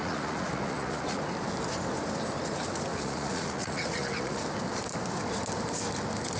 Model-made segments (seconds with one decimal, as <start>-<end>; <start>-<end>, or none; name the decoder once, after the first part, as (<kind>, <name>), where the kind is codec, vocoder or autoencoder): 0.0-1.2 (vocoder, Vocos); 2.9-4.4